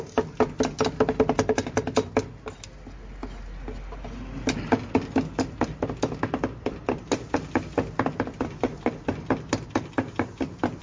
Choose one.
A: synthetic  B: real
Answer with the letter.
B